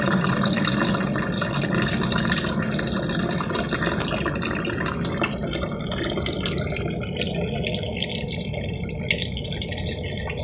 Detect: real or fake real